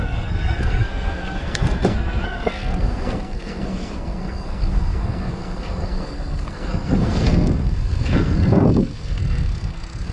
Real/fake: fake